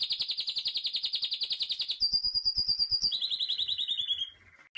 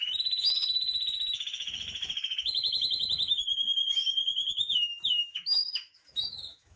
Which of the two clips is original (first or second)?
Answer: first